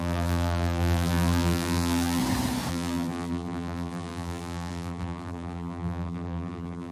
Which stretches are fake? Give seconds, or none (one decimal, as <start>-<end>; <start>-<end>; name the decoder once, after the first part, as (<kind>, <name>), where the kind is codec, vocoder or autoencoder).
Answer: 0.0-2.2 (vocoder, BigVGAN v2); 2.7-6.9